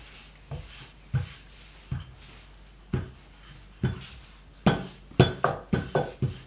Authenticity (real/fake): real